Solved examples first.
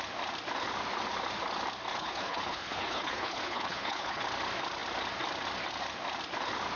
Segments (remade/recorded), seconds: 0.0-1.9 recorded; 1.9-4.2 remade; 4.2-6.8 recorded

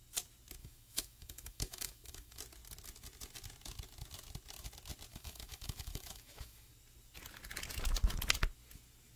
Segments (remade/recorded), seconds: 0.0-0.6 recorded; 0.6-2.4 remade; 2.4-5.1 recorded; 5.1-6.7 remade; 6.7-9.2 recorded

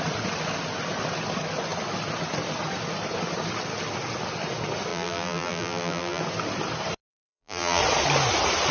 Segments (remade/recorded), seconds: 0.0-4.9 recorded; 4.9-6.2 remade; 6.2-7.1 recorded; 7.1-7.8 remade; 7.8-8.7 recorded

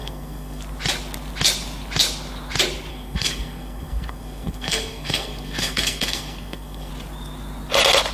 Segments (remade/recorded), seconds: 0.0-0.6 remade; 0.6-2.9 recorded; 2.9-6.9 remade; 6.9-8.1 recorded

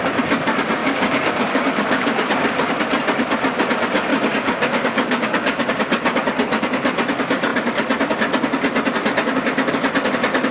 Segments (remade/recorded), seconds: 0.0-0.8 recorded; 0.8-2.7 remade; 2.7-4.1 recorded; 4.1-5.6 remade; 5.6-10.5 recorded

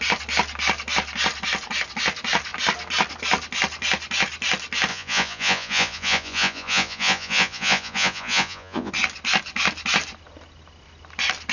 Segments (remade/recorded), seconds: 0.0-4.9 recorded; 4.9-8.9 remade; 8.9-11.5 recorded